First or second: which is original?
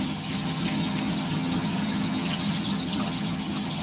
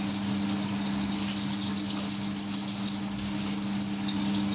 second